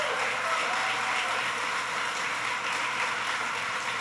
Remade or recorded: recorded